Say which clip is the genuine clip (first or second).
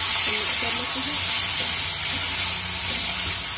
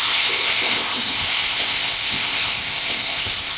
first